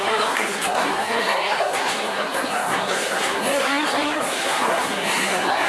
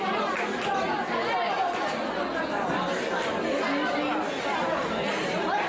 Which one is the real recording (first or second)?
second